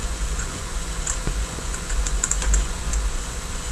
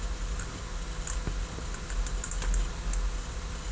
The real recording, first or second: second